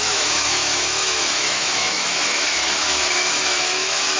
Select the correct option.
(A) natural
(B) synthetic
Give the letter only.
B